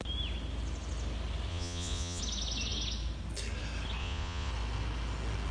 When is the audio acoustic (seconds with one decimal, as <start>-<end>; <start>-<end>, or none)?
0.0-1.5; 2.2-4.0; 4.5-5.5